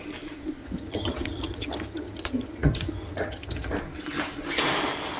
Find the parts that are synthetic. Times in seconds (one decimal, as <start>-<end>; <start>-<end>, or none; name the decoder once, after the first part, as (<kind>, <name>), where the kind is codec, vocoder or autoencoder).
0.6-3.7 (vocoder, HiFi-GAN)